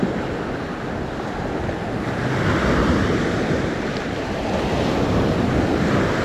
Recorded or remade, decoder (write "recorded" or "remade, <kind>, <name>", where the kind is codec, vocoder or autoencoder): recorded